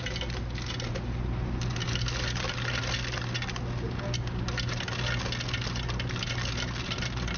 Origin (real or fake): real